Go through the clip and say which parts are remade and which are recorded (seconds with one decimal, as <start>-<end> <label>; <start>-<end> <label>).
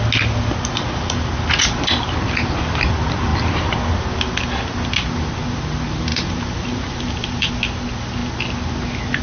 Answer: 0.0-6.1 recorded; 6.1-7.5 remade; 7.5-9.2 recorded